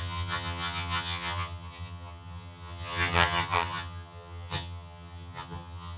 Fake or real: fake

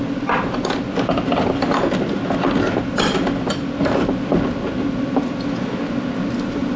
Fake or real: real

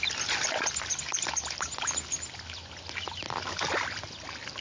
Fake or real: real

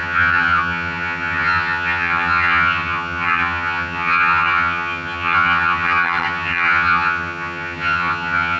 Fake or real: fake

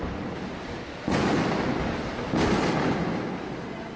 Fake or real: real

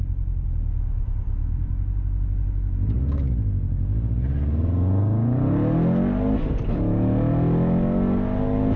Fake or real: real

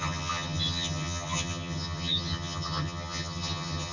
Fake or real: fake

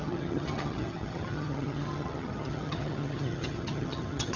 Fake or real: fake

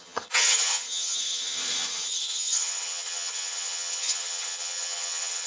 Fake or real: fake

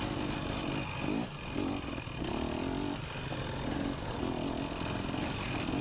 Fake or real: real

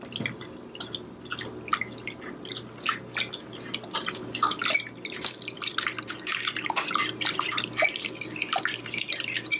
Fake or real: real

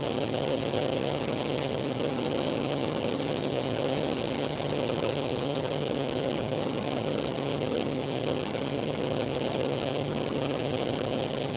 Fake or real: fake